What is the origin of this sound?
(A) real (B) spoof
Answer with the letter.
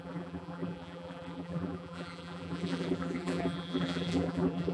B